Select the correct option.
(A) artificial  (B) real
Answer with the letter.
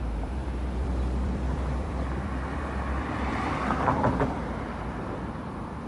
A